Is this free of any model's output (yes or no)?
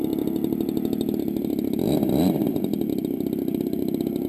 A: yes